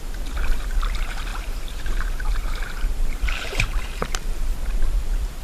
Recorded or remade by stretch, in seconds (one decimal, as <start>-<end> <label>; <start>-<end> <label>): 0.0-5.4 remade